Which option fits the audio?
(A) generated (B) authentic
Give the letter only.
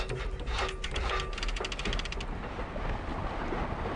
B